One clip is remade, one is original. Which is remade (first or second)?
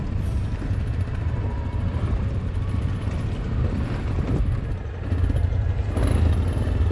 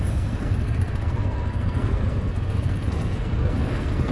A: second